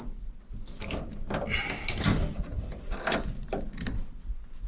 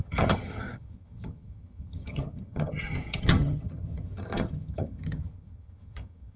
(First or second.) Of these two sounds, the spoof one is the second